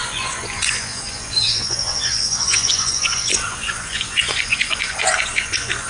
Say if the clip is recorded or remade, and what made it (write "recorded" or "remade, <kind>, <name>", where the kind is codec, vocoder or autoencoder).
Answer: remade, vocoder, Vocos